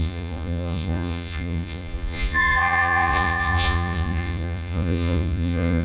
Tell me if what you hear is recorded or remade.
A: remade